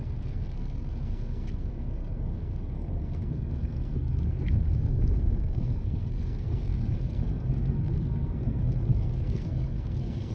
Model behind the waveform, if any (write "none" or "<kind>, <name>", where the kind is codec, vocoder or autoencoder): codec, SNAC